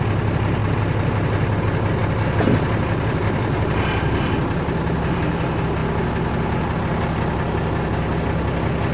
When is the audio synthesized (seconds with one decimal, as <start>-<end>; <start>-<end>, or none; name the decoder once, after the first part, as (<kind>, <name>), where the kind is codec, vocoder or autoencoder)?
2.0-5.2 (vocoder, BigVGAN v2)